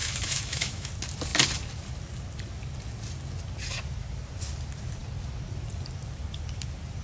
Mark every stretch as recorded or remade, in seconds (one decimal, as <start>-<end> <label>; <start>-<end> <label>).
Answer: 0.0-0.9 remade; 0.9-7.0 recorded